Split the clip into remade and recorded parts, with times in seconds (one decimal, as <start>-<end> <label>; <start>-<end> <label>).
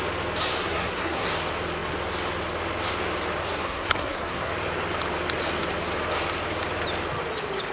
0.0-0.6 recorded; 0.6-1.3 remade; 1.3-3.4 recorded; 3.4-4.5 remade; 4.5-7.7 recorded